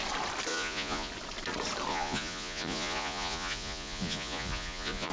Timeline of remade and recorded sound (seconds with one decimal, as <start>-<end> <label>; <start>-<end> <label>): 0.0-0.5 recorded; 0.5-1.1 remade; 1.1-1.9 recorded; 1.9-5.1 remade

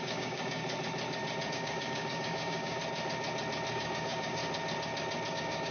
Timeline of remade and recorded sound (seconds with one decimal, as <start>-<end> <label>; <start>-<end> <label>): 0.0-0.6 remade; 0.6-1.5 recorded; 1.5-2.8 remade; 2.8-3.7 recorded; 3.7-4.4 remade; 4.4-5.3 recorded; 5.3-5.7 remade

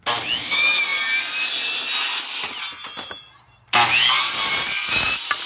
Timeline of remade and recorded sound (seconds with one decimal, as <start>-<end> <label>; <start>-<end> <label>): 0.0-5.5 recorded

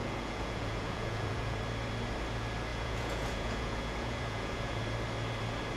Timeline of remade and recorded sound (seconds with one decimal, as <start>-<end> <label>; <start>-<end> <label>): 0.0-1.6 remade; 1.6-2.7 recorded; 2.7-4.8 remade; 4.8-5.8 recorded

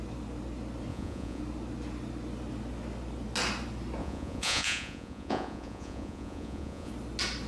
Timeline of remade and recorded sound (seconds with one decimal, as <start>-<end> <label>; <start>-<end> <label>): 0.0-0.9 recorded; 0.9-1.4 remade; 1.4-4.0 recorded; 4.0-6.9 remade; 6.9-7.5 recorded

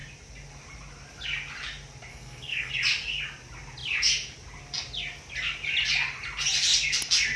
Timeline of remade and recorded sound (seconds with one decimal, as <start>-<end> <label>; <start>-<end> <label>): 0.0-2.1 recorded; 2.1-2.7 remade; 2.7-7.4 recorded

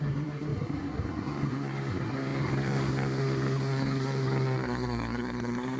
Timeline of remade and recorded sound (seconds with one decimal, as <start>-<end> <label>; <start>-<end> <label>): 0.0-5.8 remade